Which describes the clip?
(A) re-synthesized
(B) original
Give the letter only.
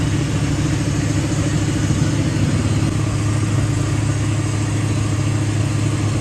B